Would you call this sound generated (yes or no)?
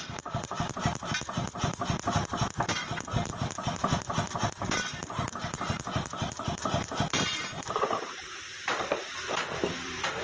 yes